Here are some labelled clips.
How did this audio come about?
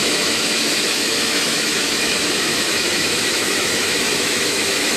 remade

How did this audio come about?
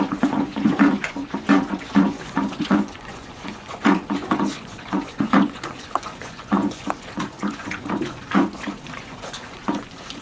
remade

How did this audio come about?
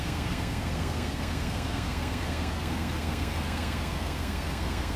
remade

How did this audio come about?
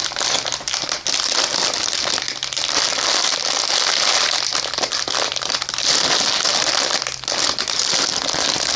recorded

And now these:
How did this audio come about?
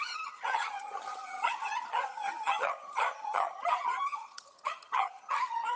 remade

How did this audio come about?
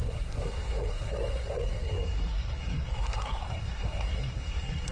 remade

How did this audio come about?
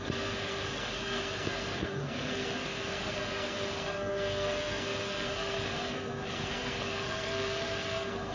remade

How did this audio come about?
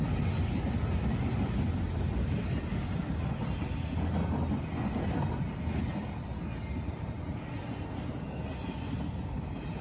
recorded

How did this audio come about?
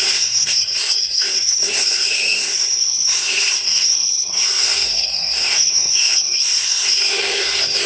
remade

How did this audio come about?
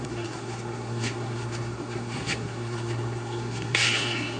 remade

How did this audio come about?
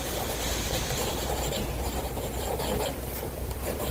remade